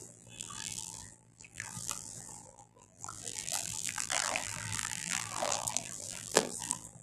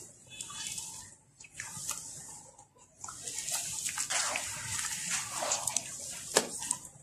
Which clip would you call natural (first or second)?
second